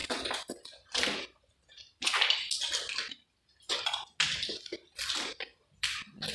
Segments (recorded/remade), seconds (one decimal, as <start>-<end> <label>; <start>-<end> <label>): 0.0-6.3 recorded